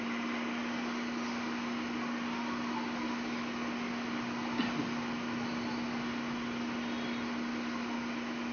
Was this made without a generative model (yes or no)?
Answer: yes